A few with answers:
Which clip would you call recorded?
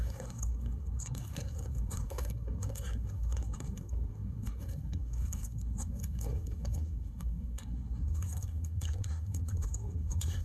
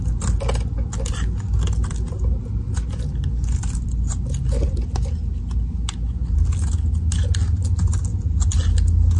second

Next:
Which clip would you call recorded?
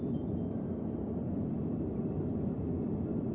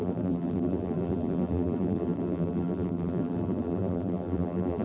first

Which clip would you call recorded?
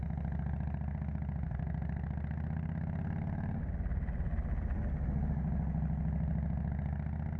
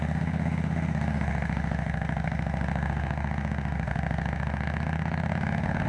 first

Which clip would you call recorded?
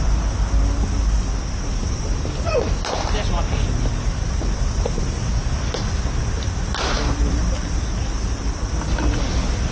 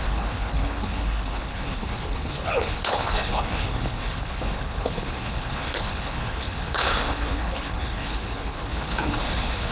first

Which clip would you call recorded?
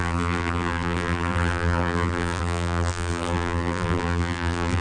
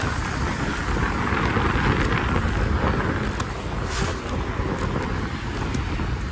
second